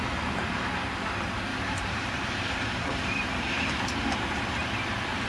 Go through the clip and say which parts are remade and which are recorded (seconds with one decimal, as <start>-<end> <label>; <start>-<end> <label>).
0.0-1.5 recorded; 1.5-4.7 remade; 4.7-5.3 recorded